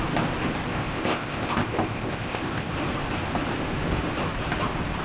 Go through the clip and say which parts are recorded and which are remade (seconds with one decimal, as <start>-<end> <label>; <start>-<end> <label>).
0.0-0.7 recorded; 0.7-2.7 remade; 2.7-5.0 recorded